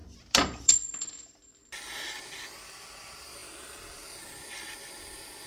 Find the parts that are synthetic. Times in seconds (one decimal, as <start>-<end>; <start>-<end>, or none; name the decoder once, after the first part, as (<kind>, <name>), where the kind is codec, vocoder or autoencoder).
0.0-1.1 (vocoder, BigVGAN v2); 1.5-2.2

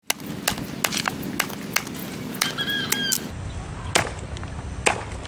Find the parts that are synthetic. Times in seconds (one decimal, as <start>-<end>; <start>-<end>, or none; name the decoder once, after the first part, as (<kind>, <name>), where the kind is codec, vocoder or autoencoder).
none

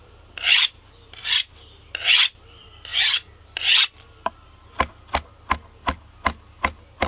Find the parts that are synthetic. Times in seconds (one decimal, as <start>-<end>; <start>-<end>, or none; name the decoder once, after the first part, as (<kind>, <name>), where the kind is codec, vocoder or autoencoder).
0.0-2.9 (vocoder, BigVGAN v2); 3.4-4.6; 6.5-7.1

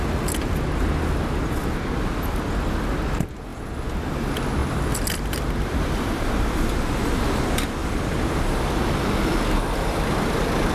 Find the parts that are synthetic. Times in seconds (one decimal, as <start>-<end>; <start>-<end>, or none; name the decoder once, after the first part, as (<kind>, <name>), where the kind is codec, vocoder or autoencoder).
4.6-7.2 (vocoder, BigVGAN v2); 7.8-10.7

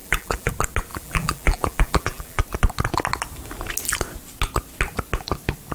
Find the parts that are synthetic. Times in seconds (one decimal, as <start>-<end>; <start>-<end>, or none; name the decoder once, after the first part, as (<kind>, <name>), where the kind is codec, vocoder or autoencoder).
0.0-0.5 (vocoder, BigVGAN v2); 0.9-2.4

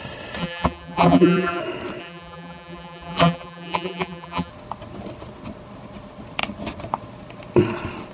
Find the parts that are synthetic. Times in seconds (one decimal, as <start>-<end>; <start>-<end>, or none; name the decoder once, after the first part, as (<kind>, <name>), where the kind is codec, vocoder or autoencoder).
0.4-1.6 (vocoder, BigVGAN v2); 2.0-4.5

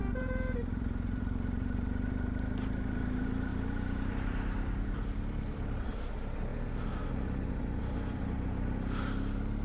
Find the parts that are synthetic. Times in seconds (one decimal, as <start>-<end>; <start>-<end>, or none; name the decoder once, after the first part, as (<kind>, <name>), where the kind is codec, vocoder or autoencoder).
0.0-6.5 (vocoder, BigVGAN v2); 7.8-9.6

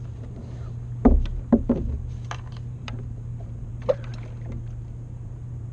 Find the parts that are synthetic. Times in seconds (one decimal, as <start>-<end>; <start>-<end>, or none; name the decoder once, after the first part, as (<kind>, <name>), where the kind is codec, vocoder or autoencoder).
0.0-4.1 (vocoder, BigVGAN v2); 4.8-5.7